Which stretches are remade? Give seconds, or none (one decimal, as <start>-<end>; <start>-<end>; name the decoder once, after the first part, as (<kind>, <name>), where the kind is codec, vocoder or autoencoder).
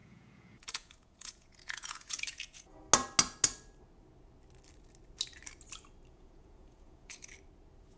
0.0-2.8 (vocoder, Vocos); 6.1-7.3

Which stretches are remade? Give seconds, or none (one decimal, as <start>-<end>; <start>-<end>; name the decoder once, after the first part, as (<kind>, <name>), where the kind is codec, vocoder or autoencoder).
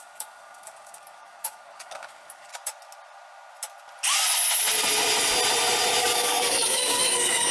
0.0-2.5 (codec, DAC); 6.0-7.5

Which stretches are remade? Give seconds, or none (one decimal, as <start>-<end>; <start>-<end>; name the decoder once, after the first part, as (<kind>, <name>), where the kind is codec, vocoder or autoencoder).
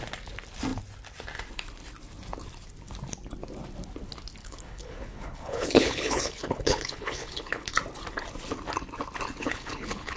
4.4-7.7 (codec, HILCodec); 9.4-10.2